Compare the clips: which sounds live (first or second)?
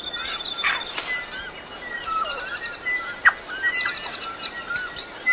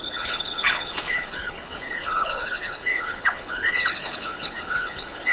first